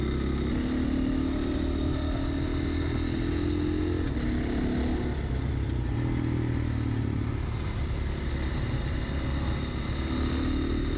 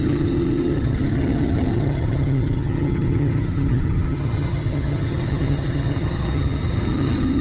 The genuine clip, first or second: first